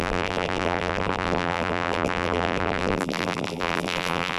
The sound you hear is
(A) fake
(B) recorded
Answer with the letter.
A